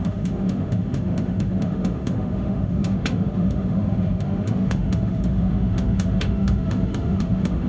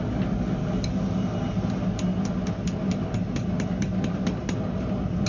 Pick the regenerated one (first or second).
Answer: first